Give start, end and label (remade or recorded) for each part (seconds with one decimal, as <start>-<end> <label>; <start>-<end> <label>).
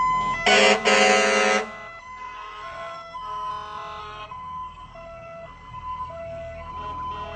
0.0-2.0 recorded; 2.0-3.5 remade; 3.5-4.0 recorded; 4.0-6.7 remade; 6.7-7.4 recorded